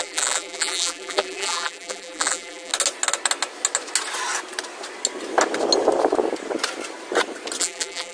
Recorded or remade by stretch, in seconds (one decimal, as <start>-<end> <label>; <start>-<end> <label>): 0.0-2.7 remade; 2.7-7.6 recorded; 7.6-8.1 remade